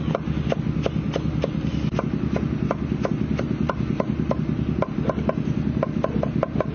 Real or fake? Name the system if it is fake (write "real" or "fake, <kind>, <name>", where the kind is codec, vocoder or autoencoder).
real